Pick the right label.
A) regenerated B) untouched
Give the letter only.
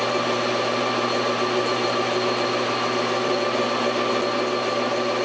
B